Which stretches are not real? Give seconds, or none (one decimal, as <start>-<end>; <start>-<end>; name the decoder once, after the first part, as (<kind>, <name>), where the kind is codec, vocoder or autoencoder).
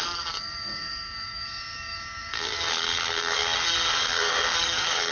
0.0-3.4 (codec, DAC); 3.9-5.1